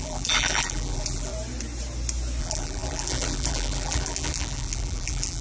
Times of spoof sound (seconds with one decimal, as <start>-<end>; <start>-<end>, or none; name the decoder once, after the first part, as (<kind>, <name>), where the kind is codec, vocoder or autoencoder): 0.0-1.3 (vocoder, BigVGAN v2); 2.4-5.4